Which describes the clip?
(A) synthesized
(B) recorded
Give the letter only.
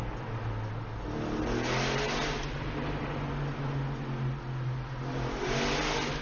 B